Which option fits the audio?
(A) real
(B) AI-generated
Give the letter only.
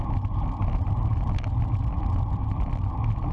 A